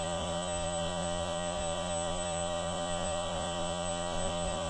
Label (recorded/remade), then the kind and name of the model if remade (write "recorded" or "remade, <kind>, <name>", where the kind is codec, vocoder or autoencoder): remade, vocoder, Vocos